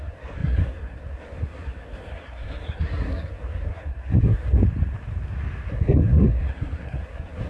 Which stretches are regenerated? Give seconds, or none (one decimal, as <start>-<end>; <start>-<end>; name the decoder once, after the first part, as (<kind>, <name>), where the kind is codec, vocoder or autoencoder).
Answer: 0.0-4.6 (codec, SNAC); 5.7-7.5